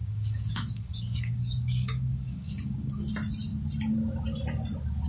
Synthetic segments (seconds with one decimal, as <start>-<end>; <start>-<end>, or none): 0.0-3.1